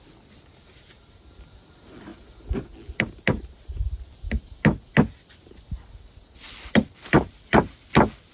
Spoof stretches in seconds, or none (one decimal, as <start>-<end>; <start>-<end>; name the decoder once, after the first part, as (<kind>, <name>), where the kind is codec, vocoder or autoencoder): none